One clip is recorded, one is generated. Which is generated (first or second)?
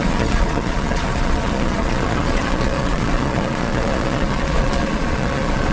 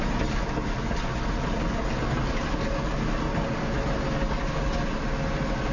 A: first